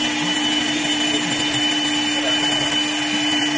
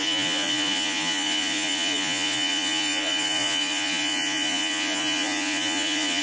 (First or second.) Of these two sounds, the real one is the first